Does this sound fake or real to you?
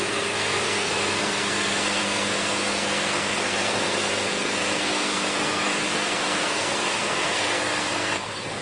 fake